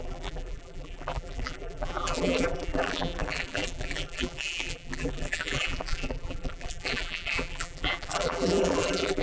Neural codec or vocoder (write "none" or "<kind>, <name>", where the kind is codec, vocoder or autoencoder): vocoder, BigVGAN v2